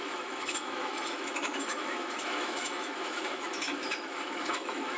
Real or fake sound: fake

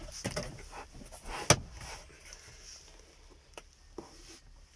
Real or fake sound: real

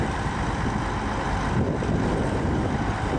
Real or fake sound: real